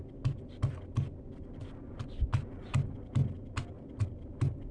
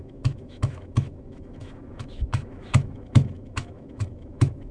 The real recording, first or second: first